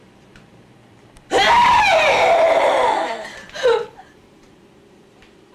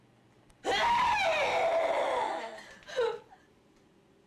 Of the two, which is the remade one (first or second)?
first